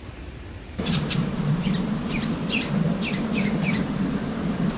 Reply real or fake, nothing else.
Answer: fake